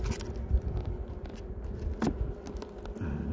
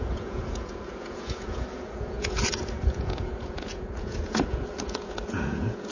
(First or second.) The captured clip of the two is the first